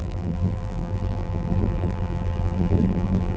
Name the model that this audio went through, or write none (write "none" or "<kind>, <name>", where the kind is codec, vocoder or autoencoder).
vocoder, BigVGAN v2